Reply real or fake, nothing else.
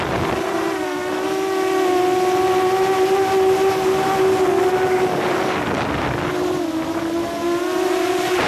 real